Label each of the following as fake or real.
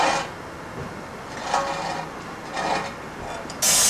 real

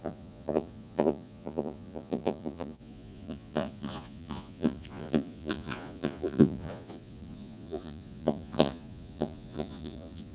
fake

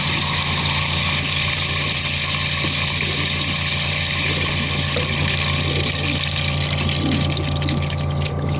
fake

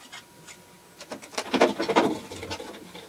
real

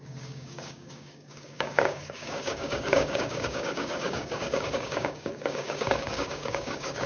fake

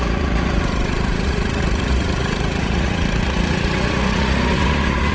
fake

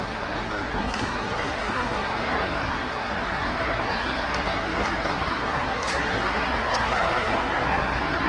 fake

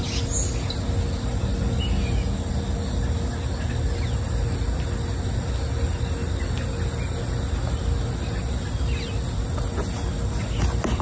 real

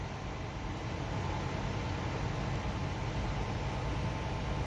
real